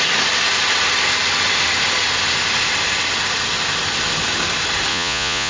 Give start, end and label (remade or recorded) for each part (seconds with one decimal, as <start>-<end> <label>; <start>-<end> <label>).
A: 0.0-4.9 recorded; 4.9-5.5 remade